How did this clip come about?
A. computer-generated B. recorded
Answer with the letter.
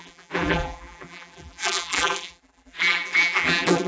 A